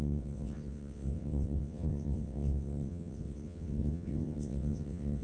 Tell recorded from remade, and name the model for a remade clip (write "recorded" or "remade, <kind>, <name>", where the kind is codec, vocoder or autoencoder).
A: remade, vocoder, WaveNeXt